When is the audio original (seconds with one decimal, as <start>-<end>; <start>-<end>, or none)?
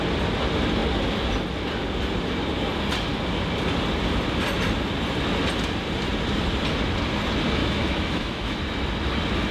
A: 0.0-7.6; 8.6-9.5